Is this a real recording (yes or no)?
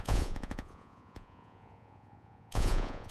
no